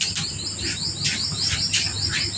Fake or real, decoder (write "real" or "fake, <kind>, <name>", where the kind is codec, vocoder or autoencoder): real